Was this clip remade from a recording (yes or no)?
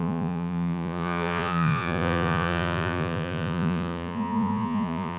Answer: yes